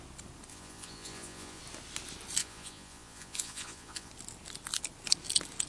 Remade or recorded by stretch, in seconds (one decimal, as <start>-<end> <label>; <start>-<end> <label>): 0.0-0.5 recorded; 0.5-1.6 remade; 1.6-2.4 recorded; 2.4-4.1 remade; 4.1-5.7 recorded